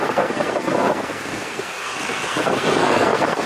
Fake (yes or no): yes